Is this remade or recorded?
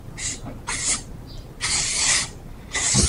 recorded